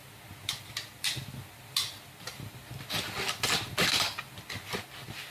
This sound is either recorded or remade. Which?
recorded